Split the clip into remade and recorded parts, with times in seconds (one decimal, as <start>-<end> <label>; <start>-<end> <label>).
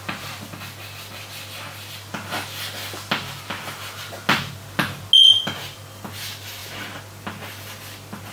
0.0-8.3 recorded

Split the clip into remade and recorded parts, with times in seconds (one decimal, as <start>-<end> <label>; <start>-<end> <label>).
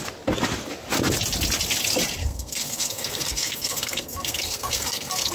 0.0-2.2 recorded; 2.2-5.3 remade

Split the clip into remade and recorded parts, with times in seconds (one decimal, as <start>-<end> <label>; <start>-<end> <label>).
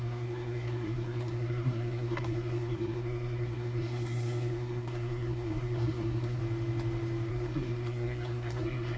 0.0-6.4 remade; 6.4-7.3 recorded; 7.3-9.0 remade